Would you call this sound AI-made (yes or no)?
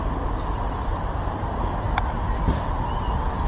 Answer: no